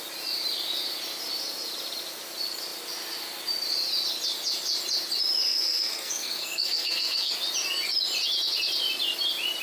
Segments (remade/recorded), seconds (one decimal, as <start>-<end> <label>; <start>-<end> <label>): 0.0-5.4 recorded; 5.4-7.3 remade; 7.3-9.6 recorded